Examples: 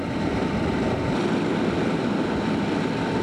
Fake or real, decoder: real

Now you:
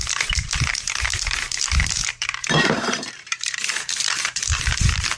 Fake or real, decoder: fake, vocoder, BigVGAN v2